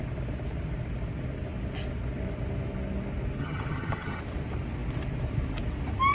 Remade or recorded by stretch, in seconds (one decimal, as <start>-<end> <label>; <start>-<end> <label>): 0.0-3.4 recorded; 3.4-4.2 remade; 4.2-6.1 recorded